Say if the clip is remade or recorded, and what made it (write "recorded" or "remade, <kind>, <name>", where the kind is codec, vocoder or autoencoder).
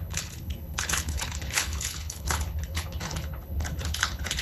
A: remade, codec, HILCodec